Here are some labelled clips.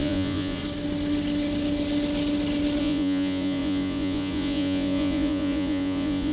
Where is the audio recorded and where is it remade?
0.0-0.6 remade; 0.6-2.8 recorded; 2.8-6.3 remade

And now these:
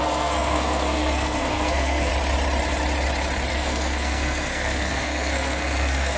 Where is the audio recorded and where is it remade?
0.0-2.1 remade; 2.1-3.5 recorded; 3.5-6.2 remade

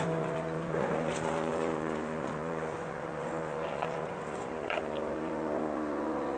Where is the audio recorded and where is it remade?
0.0-6.4 remade

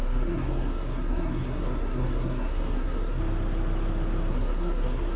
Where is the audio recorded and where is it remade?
0.0-3.2 remade; 3.2-4.3 recorded; 4.3-5.2 remade

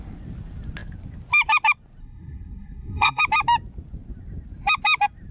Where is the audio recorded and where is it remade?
0.0-2.0 recorded; 2.0-3.2 remade; 3.2-5.3 recorded

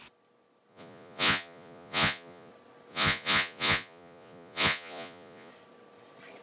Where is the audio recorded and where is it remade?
0.0-0.7 recorded; 0.7-2.5 remade; 2.5-2.9 recorded; 2.9-5.5 remade; 5.5-6.4 recorded

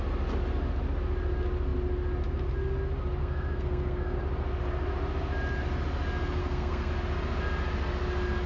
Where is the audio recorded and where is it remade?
0.0-3.2 recorded; 3.2-4.2 remade; 4.2-6.4 recorded; 6.4-6.9 remade; 6.9-8.5 recorded